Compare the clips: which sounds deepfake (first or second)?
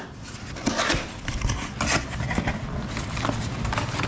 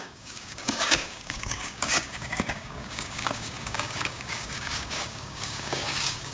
second